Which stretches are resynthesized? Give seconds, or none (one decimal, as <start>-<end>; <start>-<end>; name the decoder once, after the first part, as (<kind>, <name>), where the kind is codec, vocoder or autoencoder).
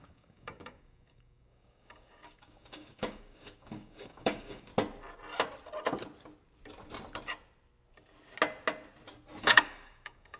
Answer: 0.0-4.7 (codec, DAC); 9.4-10.4